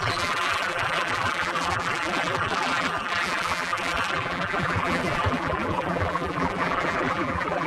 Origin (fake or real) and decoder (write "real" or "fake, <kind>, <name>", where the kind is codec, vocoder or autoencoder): fake, vocoder, BigVGAN v2